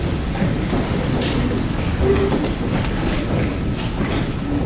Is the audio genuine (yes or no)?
yes